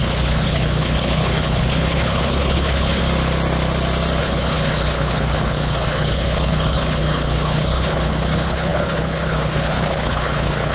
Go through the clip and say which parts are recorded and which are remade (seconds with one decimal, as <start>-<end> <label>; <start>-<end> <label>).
0.0-3.0 remade; 3.0-4.2 recorded; 4.2-10.7 remade